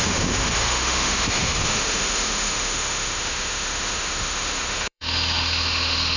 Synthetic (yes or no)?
yes